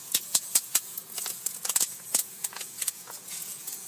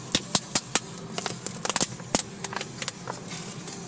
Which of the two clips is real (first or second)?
second